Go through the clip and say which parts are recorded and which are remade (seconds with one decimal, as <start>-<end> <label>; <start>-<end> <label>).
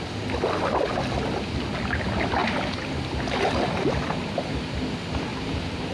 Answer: 0.0-2.4 recorded; 2.4-4.8 remade; 4.8-5.3 recorded; 5.3-5.9 remade